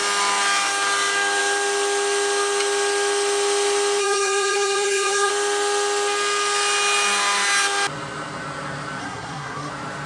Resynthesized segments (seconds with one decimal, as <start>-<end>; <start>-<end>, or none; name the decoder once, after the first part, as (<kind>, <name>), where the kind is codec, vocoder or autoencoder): 4.0-5.3 (codec, SNAC); 9.0-9.7